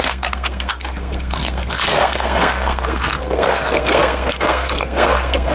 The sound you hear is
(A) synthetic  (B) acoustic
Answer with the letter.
A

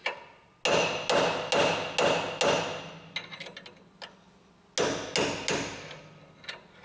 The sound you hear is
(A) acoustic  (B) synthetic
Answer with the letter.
A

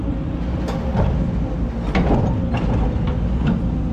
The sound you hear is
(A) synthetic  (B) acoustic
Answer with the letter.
B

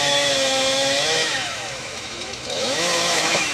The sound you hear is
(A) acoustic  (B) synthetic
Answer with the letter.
B